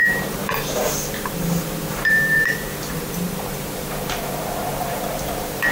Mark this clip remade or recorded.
remade